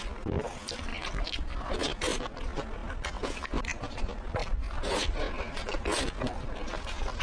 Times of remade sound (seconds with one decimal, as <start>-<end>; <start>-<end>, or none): none